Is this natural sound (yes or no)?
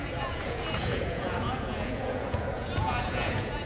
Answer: no